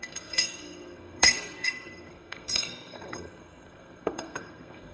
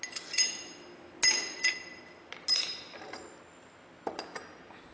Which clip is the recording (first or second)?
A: second